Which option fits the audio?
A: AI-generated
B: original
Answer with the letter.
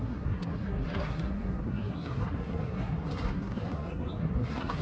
A